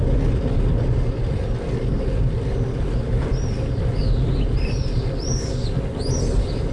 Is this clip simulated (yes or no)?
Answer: no